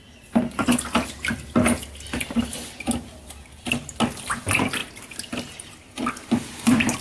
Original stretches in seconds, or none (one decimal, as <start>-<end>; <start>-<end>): 0.0-4.8; 5.4-7.0

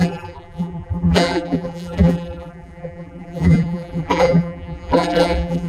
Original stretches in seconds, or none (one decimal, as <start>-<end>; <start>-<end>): none

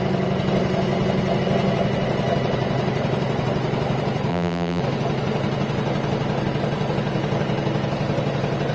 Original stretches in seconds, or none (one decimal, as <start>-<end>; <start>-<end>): 0.0-4.3; 4.8-8.7